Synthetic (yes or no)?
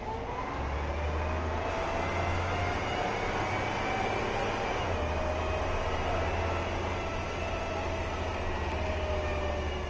no